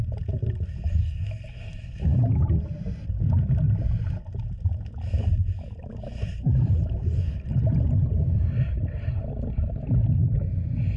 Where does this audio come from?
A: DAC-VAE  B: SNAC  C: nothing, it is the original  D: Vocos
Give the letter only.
C